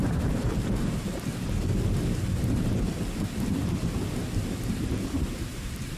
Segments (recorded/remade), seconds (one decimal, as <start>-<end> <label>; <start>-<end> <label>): 0.0-1.3 remade; 1.3-4.7 recorded; 4.7-6.0 remade